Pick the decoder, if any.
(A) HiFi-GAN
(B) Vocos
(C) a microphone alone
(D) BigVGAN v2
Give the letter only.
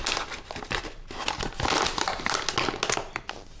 C